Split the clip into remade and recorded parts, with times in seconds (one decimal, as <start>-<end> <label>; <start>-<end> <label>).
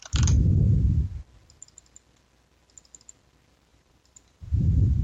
0.0-3.7 recorded; 3.7-5.0 remade